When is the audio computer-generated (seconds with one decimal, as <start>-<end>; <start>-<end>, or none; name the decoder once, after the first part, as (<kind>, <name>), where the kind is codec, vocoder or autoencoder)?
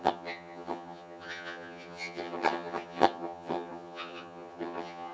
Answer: 0.0-5.1 (vocoder, HiFi-GAN)